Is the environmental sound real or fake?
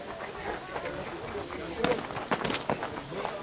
real